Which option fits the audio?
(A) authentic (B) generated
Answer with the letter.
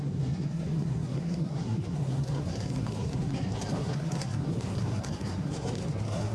B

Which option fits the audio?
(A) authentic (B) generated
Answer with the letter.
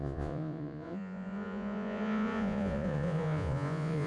B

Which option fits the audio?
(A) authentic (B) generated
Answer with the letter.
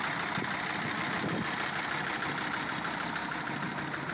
A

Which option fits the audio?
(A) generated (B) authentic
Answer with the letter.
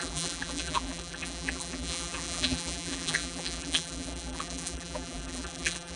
A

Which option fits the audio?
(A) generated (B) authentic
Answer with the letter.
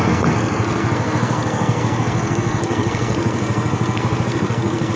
A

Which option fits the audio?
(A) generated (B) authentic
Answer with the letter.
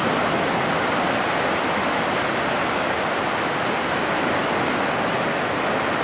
B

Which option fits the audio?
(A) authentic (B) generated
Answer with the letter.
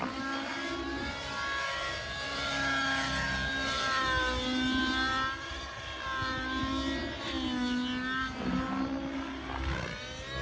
A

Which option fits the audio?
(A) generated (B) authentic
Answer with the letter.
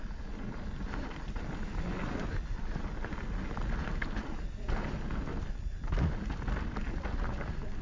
B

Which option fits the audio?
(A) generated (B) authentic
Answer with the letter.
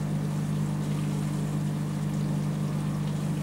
B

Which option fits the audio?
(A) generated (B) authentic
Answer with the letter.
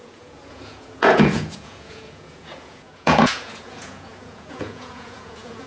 A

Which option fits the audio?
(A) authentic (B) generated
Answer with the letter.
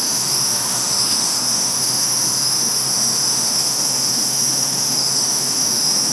B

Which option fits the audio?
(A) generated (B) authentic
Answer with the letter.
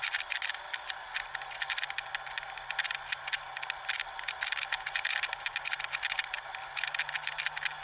B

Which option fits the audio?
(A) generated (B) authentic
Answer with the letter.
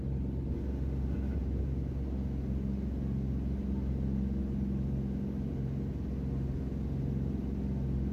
B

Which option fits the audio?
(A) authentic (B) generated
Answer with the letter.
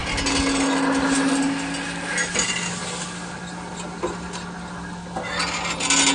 A